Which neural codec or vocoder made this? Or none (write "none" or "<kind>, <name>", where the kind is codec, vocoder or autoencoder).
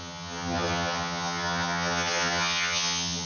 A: vocoder, HiFi-GAN